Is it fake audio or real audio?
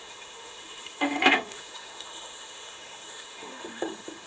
fake